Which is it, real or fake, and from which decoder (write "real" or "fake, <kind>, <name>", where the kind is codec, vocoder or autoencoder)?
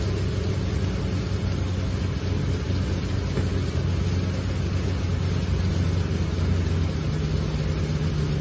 real